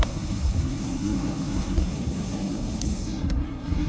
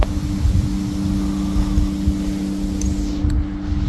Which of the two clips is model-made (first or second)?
first